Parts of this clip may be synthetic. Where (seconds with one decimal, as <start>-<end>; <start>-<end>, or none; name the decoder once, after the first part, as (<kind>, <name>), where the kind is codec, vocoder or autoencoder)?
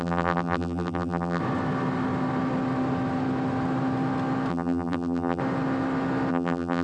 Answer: 0.0-1.4 (vocoder, BigVGAN v2); 4.5-5.4; 6.3-6.8